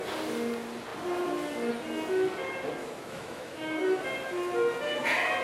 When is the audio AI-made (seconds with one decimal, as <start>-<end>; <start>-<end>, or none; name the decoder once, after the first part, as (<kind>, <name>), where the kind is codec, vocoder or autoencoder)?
2.8-4.0 (autoencoder, DAC-VAE)